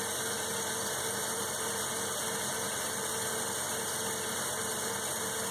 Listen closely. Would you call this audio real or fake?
real